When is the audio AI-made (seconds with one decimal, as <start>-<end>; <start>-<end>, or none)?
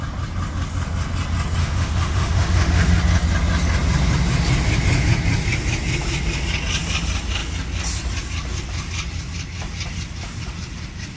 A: 1.6-3.0